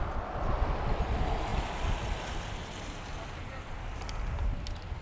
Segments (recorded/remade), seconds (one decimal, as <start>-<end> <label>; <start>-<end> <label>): 0.0-5.0 recorded